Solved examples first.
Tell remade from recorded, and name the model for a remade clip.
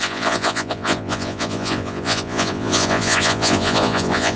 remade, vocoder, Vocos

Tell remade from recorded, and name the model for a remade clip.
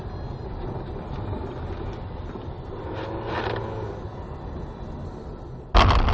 recorded